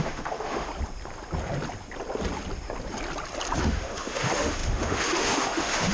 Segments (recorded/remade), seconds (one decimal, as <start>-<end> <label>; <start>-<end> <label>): 0.0-0.7 remade; 0.7-3.6 recorded; 3.6-5.9 remade